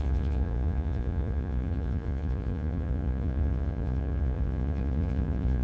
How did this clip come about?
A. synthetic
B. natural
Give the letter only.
A